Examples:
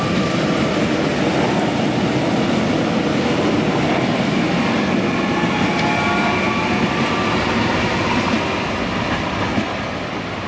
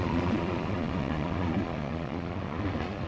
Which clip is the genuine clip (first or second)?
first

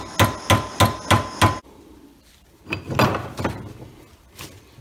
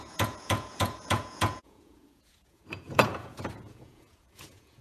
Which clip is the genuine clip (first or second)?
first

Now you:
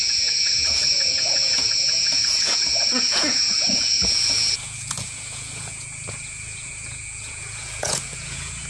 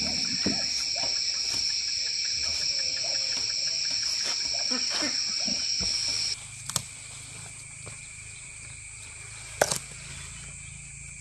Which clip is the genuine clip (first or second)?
second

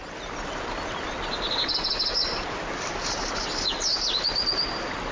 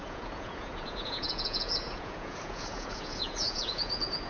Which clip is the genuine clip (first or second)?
first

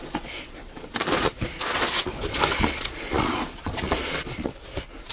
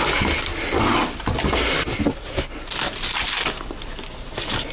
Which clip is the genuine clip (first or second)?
second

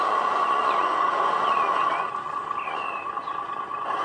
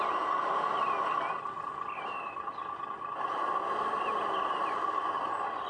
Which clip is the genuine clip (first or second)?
second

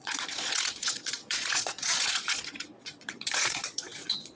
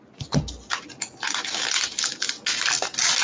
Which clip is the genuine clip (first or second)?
second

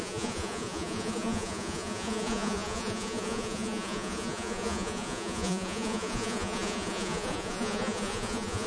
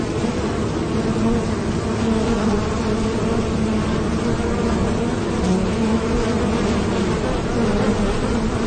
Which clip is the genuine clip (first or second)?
second